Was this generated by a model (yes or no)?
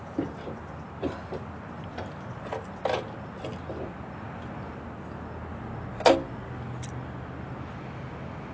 no